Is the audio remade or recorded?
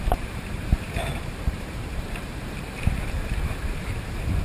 remade